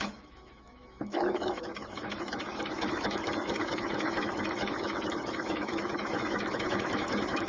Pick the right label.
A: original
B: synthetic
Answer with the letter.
B